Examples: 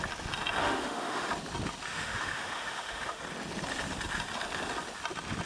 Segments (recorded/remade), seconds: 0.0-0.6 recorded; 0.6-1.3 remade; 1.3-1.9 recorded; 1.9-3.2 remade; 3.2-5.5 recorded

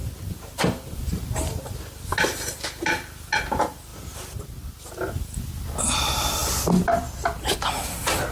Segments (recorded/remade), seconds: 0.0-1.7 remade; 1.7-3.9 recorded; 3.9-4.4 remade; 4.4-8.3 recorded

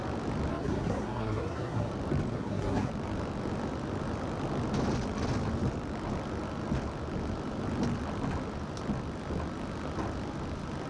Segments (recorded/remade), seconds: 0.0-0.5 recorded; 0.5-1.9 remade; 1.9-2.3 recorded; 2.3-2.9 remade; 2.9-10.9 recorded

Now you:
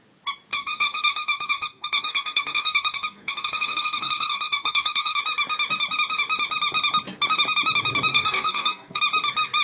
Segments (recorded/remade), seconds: 0.0-0.5 recorded; 0.5-5.2 remade; 5.2-8.1 recorded; 8.1-9.0 remade; 9.0-9.6 recorded